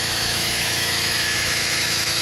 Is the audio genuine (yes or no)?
no